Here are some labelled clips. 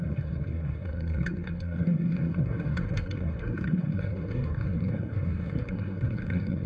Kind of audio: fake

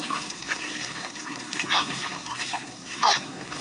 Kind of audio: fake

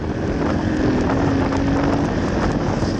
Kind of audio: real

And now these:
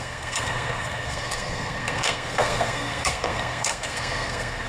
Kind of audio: fake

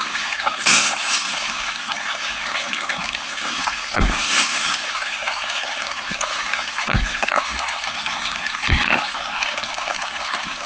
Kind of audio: fake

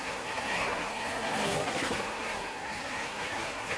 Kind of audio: fake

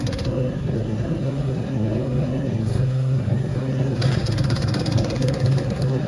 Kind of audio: fake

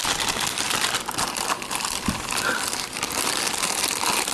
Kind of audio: real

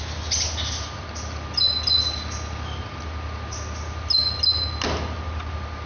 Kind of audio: real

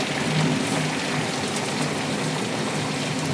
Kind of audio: real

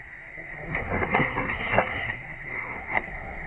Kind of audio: fake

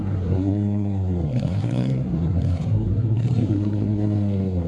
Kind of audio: fake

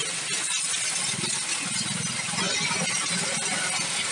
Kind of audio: real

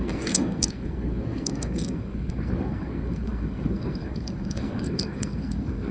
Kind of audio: fake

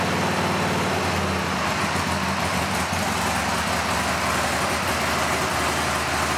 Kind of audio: real